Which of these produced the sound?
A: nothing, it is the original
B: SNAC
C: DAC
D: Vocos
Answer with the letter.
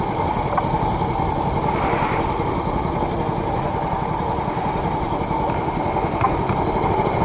A